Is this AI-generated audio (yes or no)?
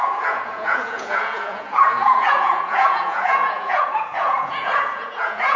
yes